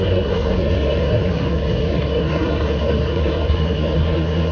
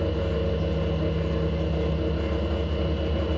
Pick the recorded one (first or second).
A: second